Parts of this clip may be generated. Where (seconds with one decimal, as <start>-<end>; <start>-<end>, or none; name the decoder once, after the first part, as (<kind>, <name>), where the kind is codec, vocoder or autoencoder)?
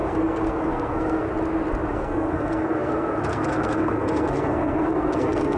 0.0-1.3 (codec, SNAC); 1.9-5.6